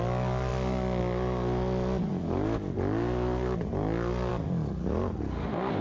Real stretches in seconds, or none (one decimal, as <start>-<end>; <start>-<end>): 0.0-5.8